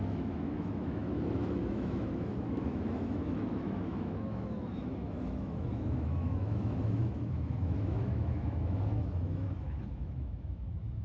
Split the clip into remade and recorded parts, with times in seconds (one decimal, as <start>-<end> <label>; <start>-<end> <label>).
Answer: 0.0-11.0 remade